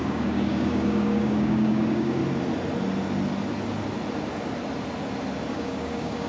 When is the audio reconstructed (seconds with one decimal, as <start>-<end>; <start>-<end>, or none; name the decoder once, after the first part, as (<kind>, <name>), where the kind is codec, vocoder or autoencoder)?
0.0-2.2 (codec, DAC); 5.5-6.3